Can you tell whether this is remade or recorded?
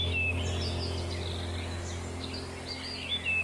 recorded